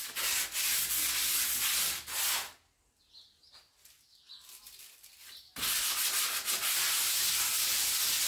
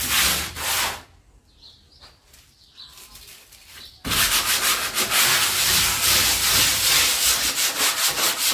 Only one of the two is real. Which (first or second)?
first